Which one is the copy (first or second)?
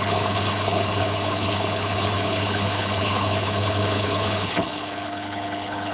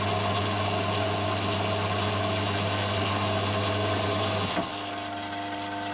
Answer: first